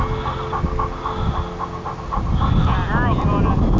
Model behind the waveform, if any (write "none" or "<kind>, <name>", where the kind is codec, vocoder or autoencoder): none